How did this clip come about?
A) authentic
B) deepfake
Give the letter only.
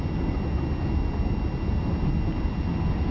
A